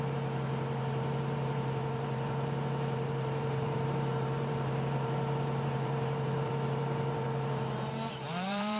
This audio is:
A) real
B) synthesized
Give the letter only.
B